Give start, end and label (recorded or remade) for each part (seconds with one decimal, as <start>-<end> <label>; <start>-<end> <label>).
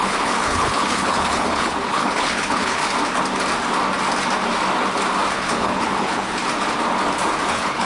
0.0-2.8 remade; 2.8-5.3 recorded; 5.3-6.4 remade; 6.4-7.5 recorded; 7.5-7.9 remade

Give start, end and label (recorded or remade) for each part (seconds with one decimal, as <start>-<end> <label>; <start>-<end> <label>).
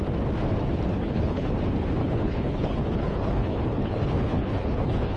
0.0-0.9 recorded; 0.9-1.5 remade; 1.5-2.0 recorded; 2.0-5.2 remade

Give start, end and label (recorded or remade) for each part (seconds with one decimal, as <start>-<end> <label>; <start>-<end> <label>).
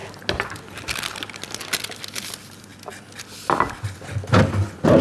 0.0-5.0 recorded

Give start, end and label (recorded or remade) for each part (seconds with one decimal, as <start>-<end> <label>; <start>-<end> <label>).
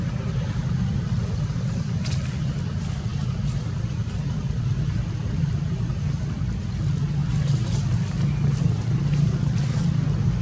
0.0-10.4 recorded